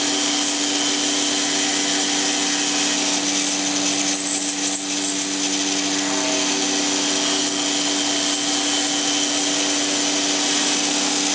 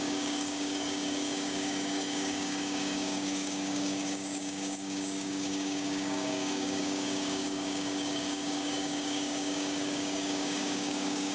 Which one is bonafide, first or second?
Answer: first